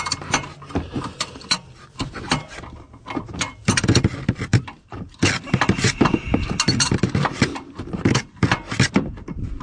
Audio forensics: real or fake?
real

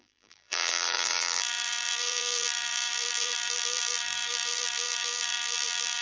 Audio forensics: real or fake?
fake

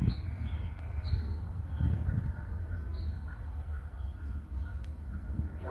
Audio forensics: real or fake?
fake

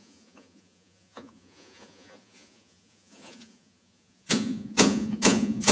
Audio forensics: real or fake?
fake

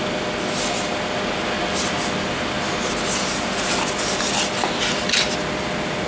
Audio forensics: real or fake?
real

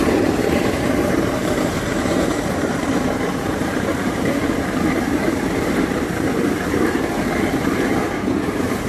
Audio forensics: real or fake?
fake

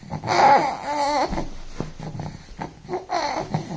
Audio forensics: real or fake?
real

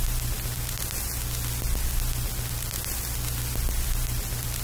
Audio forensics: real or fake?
real